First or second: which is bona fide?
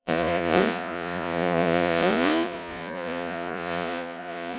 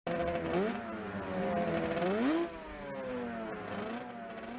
second